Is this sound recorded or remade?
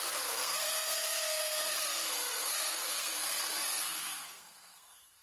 remade